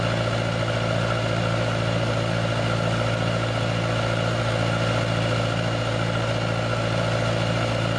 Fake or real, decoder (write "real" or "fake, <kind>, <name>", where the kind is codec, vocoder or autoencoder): real